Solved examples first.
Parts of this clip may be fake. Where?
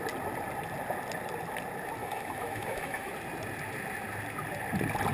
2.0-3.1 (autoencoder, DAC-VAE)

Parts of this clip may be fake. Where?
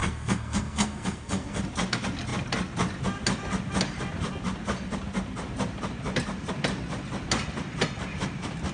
0.0-1.6 (codec, SNAC)